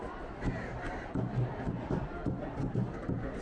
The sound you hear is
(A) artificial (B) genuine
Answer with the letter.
B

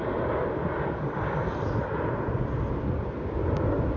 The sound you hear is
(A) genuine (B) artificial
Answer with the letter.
A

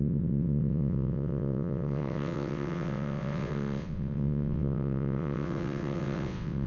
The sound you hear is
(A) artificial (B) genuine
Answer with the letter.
A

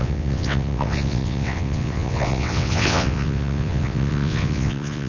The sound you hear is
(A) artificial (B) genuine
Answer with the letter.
A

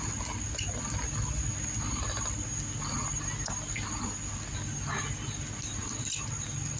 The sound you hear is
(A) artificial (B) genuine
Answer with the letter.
B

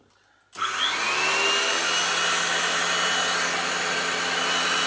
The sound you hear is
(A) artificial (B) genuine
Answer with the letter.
B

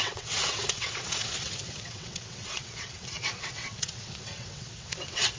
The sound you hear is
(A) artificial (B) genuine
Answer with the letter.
A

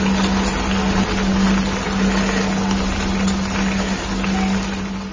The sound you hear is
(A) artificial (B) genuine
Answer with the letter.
B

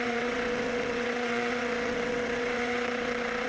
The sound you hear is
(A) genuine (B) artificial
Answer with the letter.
B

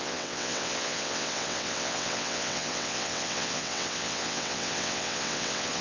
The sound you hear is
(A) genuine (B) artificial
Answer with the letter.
B